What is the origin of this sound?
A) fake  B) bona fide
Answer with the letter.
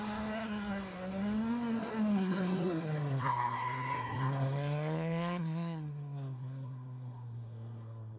A